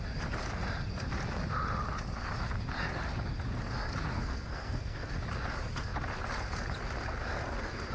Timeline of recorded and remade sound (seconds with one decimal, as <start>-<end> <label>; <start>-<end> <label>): 0.0-4.1 recorded; 4.1-5.1 remade; 5.1-7.9 recorded